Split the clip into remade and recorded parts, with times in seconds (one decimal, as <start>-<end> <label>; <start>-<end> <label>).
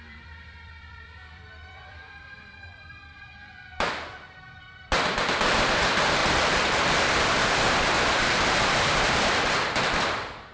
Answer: 0.0-10.5 remade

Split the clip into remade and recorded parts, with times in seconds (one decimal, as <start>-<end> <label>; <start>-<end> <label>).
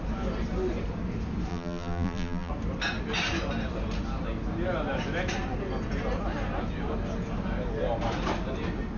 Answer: 0.0-1.5 recorded; 1.5-2.5 remade; 2.5-9.0 recorded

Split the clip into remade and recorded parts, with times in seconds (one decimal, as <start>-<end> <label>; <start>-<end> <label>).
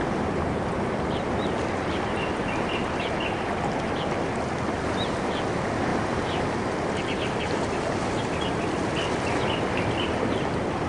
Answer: 0.0-5.9 recorded; 5.9-6.5 remade; 6.5-10.9 recorded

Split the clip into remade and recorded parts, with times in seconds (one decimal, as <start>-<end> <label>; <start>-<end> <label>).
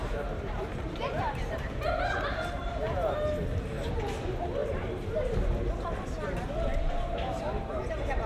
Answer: 0.0-3.9 remade; 3.9-4.6 recorded; 4.6-7.8 remade; 7.8-8.3 recorded